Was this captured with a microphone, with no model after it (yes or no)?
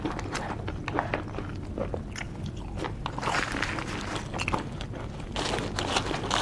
yes